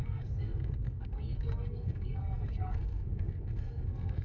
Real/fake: fake